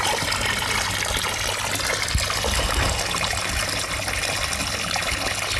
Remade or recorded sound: recorded